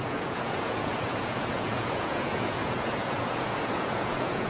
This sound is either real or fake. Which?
fake